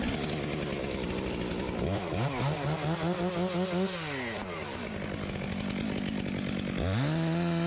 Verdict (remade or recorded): recorded